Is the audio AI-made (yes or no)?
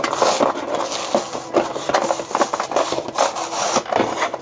no